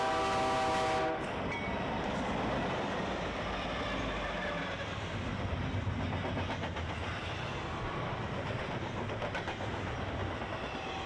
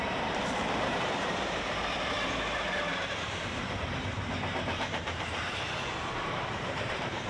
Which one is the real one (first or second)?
first